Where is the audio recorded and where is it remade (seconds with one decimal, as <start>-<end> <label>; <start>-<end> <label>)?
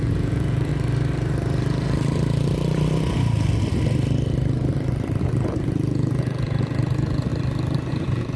0.0-0.7 remade; 0.7-5.2 recorded; 5.2-7.3 remade; 7.3-7.9 recorded; 7.9-8.4 remade